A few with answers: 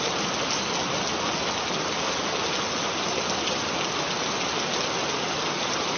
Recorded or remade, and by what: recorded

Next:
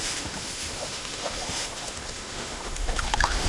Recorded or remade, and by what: remade, autoencoder, DAC-VAE